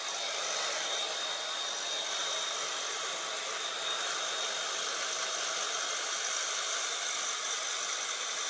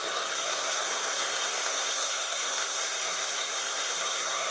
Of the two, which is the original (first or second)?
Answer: first